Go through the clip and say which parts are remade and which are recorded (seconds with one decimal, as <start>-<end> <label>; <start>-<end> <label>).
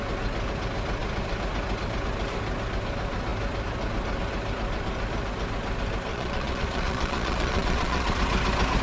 0.0-6.1 recorded; 6.1-8.2 remade; 8.2-8.8 recorded